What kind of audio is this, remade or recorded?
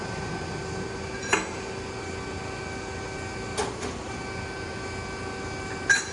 recorded